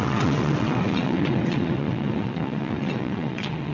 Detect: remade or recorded remade